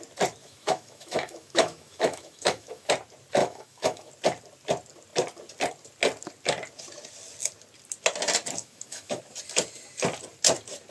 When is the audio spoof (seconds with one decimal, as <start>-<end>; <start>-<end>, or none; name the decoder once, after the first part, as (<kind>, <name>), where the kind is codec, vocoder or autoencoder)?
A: 0.4-2.9 (autoencoder, DAC-VAE); 3.4-4.1; 8.6-9.2